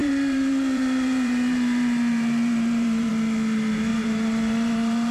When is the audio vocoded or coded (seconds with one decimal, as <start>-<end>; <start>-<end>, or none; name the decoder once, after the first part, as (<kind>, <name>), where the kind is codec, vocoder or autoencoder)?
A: 0.0-3.1 (vocoder, BigVGAN v2); 3.9-5.1